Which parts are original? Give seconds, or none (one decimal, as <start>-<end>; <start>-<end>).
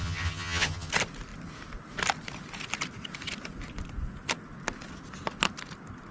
0.9-6.1